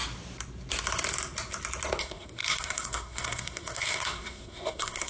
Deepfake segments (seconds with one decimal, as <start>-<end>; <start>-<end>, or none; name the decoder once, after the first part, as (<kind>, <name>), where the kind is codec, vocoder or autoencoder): 2.0-5.1 (codec, SNAC)